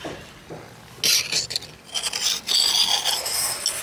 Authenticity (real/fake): real